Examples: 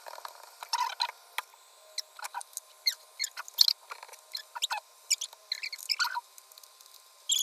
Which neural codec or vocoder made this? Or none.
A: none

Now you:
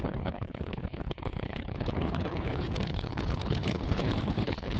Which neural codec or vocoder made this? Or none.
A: codec, HILCodec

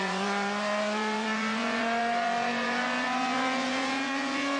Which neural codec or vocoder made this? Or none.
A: vocoder, Vocos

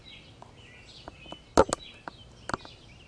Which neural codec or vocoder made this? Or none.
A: none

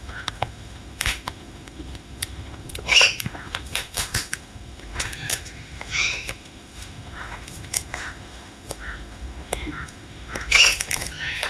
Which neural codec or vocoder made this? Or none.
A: autoencoder, DAC-VAE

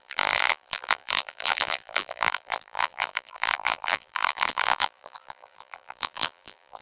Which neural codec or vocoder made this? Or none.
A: vocoder, BigVGAN v2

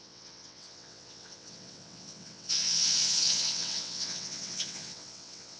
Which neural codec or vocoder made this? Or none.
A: vocoder, WaveNeXt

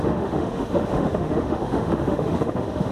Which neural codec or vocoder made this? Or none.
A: autoencoder, DAC-VAE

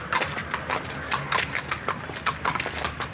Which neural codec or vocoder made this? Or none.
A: none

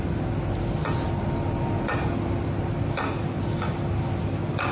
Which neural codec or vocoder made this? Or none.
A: none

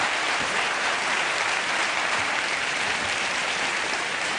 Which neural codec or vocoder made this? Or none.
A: vocoder, BigVGAN v2